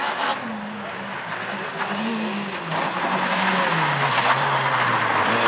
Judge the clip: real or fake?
real